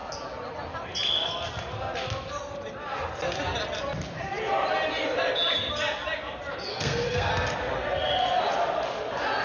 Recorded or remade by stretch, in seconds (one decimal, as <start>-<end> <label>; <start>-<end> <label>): 0.0-6.7 recorded; 6.7-7.3 remade; 7.3-9.4 recorded